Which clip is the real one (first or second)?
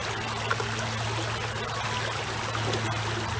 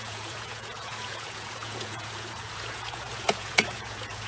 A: first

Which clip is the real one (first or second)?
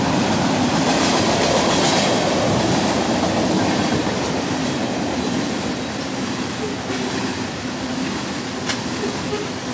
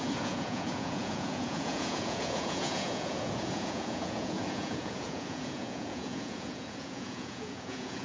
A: first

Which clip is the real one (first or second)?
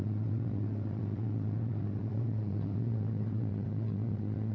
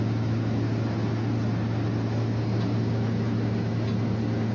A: second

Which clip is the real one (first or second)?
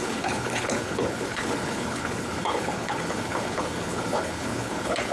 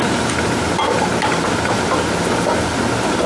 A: second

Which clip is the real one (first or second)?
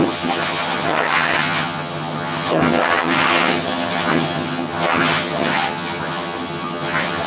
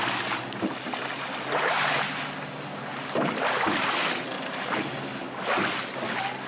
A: second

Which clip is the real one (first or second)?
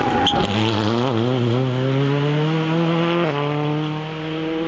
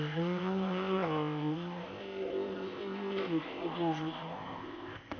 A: first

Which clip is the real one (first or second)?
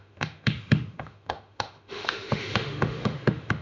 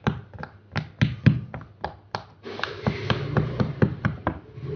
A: second